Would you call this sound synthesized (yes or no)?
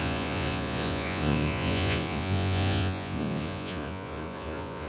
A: yes